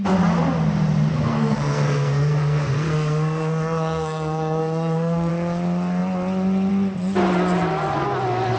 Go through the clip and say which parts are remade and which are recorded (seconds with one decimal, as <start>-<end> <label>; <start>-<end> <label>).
0.0-1.1 recorded; 1.1-5.3 remade; 5.3-8.6 recorded